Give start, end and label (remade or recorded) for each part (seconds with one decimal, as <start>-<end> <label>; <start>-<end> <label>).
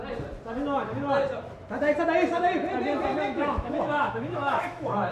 0.0-3.1 recorded; 3.1-5.1 remade